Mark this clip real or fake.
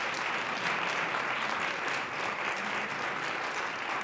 real